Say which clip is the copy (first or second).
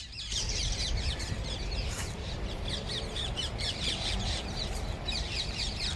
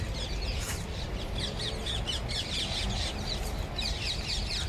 first